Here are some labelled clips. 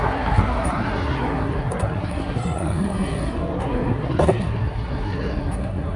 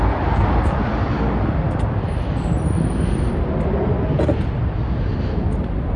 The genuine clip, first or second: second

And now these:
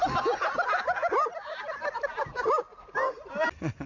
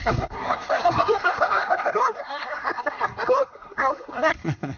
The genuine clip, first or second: first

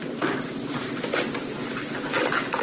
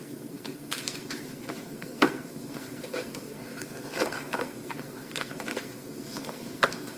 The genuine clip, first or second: first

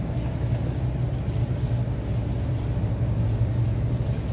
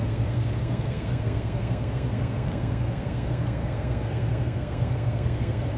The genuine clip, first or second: first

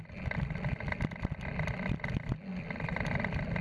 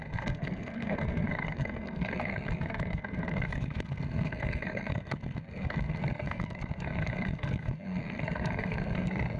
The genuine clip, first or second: first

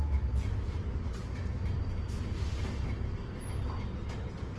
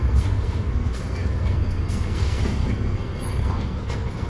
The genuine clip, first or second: first